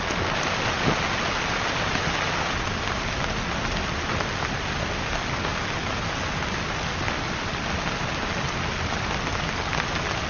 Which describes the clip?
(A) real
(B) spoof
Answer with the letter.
A